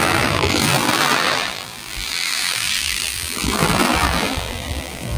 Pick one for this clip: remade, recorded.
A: remade